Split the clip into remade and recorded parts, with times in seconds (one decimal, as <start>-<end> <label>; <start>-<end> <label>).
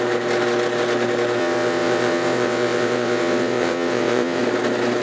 0.0-1.4 recorded; 1.4-4.4 remade; 4.4-5.0 recorded